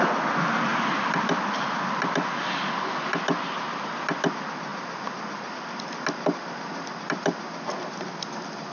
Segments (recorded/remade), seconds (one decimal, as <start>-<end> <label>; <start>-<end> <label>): 0.0-8.7 recorded